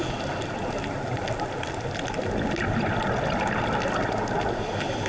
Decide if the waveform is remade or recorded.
recorded